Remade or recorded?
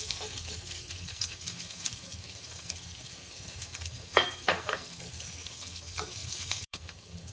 remade